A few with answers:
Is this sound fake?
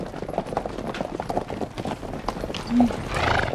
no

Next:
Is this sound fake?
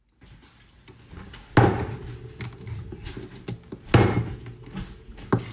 no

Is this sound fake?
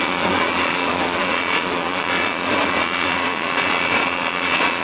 yes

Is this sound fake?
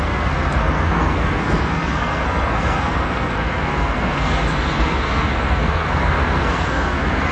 yes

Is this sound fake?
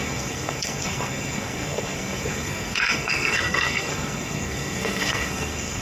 yes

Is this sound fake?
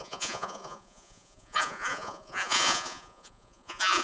yes